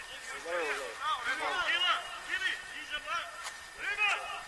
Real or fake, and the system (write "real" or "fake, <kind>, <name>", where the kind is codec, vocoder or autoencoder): real